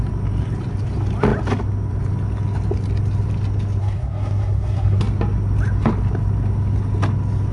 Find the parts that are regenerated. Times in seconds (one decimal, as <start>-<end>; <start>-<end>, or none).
3.8-5.0